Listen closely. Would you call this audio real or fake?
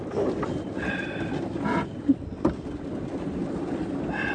real